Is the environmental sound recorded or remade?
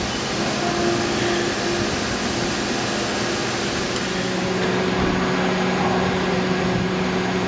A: recorded